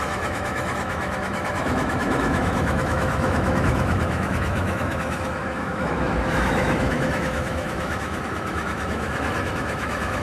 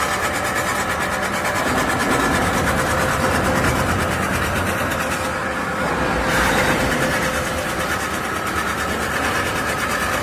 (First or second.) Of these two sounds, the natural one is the second